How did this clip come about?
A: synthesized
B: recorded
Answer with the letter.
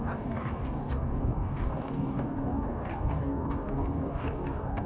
A